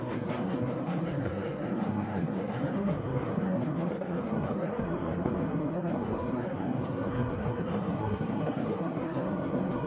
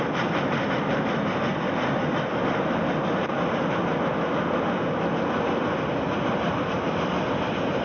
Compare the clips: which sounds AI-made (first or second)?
first